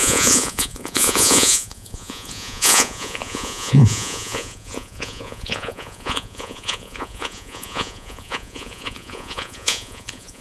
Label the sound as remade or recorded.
remade